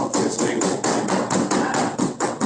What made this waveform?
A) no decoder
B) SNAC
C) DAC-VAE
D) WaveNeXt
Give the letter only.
D